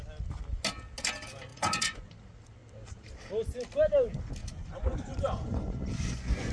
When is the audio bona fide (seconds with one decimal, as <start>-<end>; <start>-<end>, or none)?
0.0-1.5; 2.1-4.4